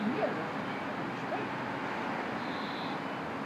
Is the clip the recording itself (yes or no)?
yes